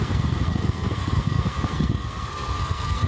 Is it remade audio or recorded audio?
remade